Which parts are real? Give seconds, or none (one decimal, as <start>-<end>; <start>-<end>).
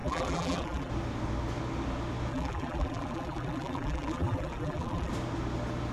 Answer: 0.9-2.3; 5.1-5.9